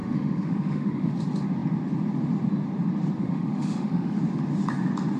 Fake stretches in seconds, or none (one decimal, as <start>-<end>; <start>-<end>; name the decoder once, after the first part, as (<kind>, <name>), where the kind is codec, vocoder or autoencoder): 0.0-1.1 (autoencoder, DAC-VAE); 3.2-4.2